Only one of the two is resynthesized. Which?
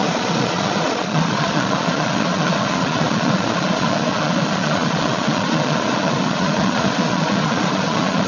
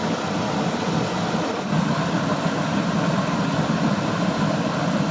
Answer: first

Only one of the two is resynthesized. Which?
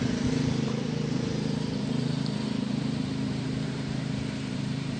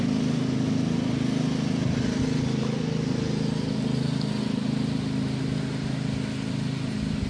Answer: first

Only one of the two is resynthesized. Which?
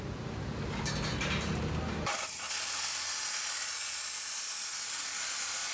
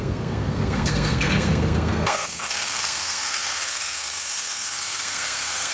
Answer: second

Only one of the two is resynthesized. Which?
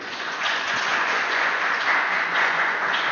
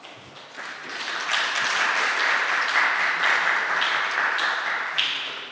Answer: first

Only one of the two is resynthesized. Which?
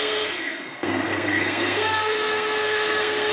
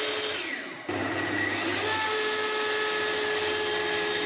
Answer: first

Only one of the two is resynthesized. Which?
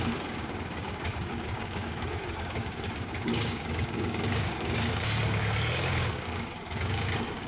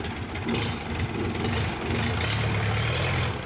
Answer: first